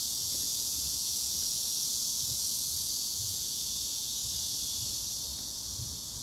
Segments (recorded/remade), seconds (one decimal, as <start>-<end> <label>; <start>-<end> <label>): 0.0-4.2 remade; 4.2-5.4 recorded; 5.4-6.2 remade